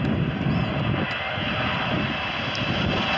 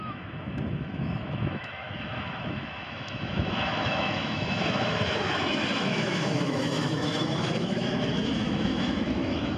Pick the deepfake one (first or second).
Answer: second